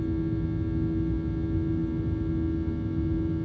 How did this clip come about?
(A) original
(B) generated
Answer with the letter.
A